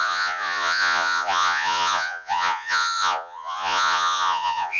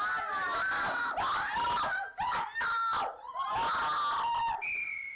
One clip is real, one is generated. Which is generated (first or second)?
first